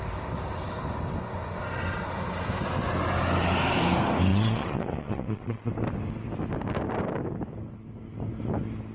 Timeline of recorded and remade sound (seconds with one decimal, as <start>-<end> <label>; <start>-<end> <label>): 0.0-4.3 recorded; 4.3-5.7 remade; 5.7-8.9 recorded